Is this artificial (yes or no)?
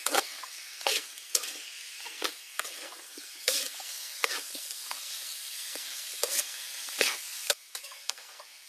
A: yes